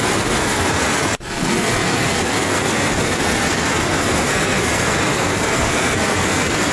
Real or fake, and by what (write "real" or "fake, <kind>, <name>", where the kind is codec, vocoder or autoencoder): fake, codec, SNAC